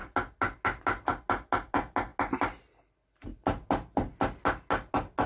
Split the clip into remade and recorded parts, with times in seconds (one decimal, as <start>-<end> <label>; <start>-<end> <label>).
0.0-5.3 recorded